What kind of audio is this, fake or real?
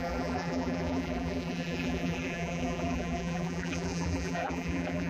fake